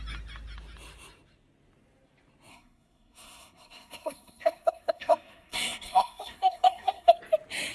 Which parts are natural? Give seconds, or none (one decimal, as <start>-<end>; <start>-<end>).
0.0-2.5; 7.1-7.7